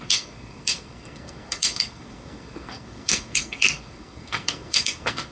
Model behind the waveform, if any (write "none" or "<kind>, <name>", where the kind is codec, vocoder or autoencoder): codec, SNAC